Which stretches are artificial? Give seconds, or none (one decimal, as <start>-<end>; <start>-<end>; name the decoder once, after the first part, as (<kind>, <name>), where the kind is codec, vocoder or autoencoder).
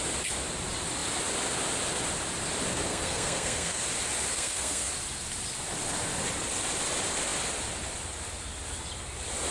2.9-3.8 (codec, SNAC); 4.3-4.9